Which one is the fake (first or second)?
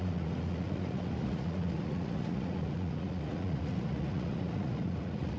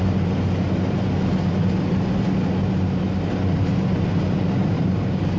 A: first